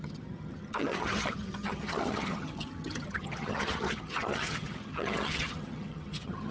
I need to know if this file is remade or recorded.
remade